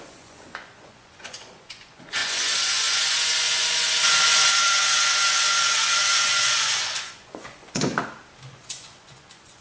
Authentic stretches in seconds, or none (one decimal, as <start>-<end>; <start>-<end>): 7.9-8.5